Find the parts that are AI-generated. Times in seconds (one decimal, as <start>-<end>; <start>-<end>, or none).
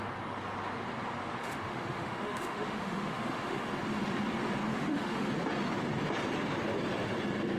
1.4-3.7; 4.7-5.3